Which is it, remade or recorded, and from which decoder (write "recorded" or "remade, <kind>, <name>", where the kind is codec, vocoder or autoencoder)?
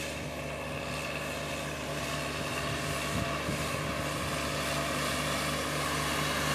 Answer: recorded